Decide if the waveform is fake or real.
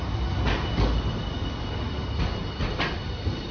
real